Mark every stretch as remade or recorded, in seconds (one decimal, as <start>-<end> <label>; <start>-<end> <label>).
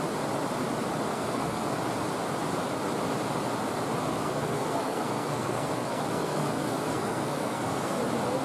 0.0-1.1 recorded; 1.1-1.7 remade; 1.7-4.1 recorded; 4.1-8.0 remade; 8.0-8.4 recorded